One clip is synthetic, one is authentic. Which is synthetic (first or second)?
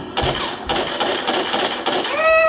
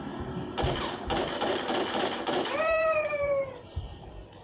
second